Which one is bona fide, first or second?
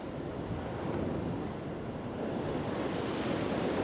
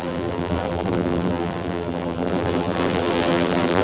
first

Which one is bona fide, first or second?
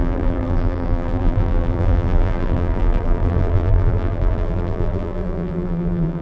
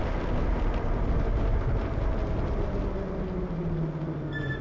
second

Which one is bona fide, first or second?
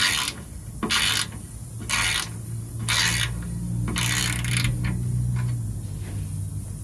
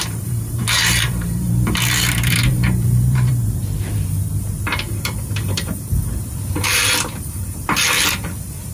first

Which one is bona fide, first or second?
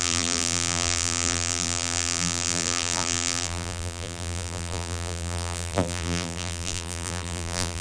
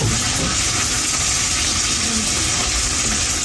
second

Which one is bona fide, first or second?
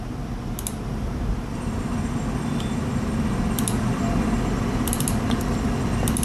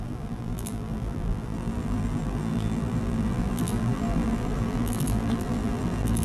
first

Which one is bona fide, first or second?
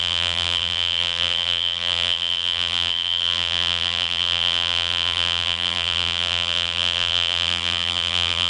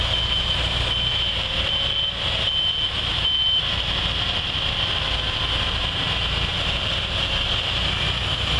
second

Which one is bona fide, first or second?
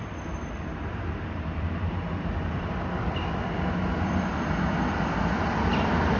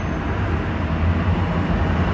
second